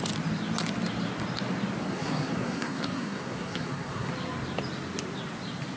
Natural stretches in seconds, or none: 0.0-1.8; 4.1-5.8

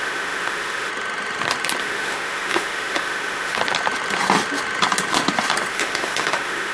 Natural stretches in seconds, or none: 0.9-1.8; 3.6-5.7

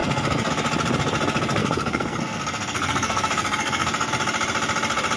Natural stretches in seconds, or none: 0.5-1.6; 4.1-5.2

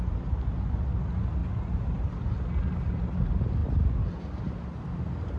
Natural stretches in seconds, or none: 0.0-5.4